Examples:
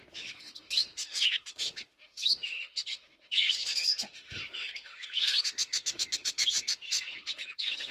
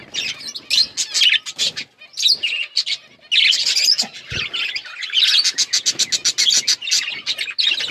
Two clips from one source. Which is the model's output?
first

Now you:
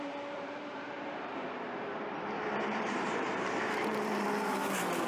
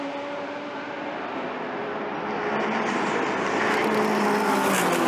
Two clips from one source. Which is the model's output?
first